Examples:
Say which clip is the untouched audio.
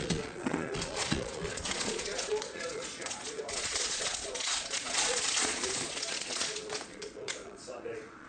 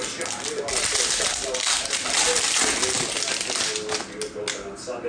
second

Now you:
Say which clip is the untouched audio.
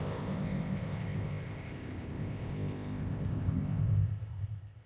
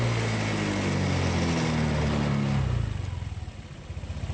second